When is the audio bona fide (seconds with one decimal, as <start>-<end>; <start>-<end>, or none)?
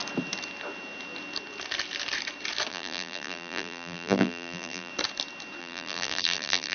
0.0-2.7; 4.9-5.6